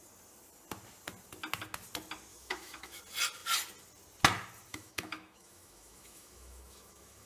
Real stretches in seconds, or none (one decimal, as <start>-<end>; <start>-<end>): 0.0-2.3; 3.0-4.7

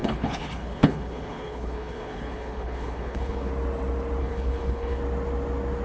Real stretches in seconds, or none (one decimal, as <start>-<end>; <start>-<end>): 3.5-4.2; 5.0-5.8

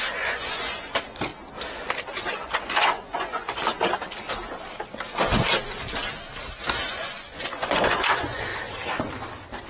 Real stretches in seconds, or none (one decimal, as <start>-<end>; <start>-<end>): 1.3-2.3; 3.6-6.9; 8.5-9.7

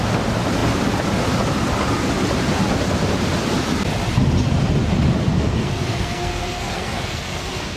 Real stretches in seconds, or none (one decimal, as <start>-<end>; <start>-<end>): 0.0-5.3

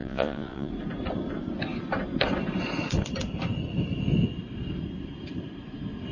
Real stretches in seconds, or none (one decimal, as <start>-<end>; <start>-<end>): 0.7-6.1